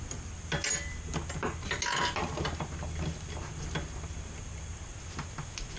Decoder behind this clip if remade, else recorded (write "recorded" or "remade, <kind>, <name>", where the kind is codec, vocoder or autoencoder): recorded